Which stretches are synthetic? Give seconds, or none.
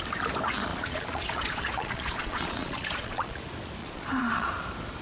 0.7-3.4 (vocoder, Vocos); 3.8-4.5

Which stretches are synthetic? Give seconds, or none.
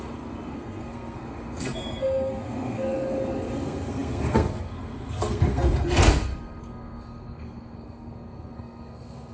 0.0-9.3 (codec, SNAC)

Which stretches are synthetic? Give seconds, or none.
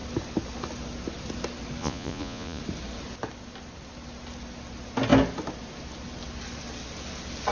1.8-2.6 (vocoder, Vocos)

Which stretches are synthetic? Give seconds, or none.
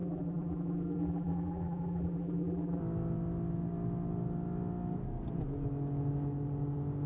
0.0-2.8 (vocoder, BigVGAN v2)